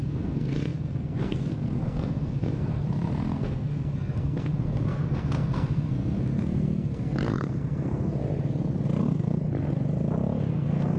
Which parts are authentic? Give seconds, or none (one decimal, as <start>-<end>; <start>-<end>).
8.2-9.0; 9.4-10.5